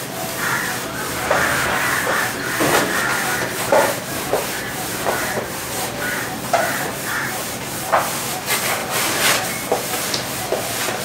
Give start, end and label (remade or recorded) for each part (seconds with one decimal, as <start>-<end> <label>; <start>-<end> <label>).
0.0-3.1 recorded; 3.1-8.0 remade; 8.0-11.0 recorded